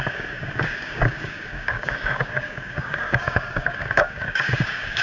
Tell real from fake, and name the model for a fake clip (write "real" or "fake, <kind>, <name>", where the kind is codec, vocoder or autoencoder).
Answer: fake, codec, DAC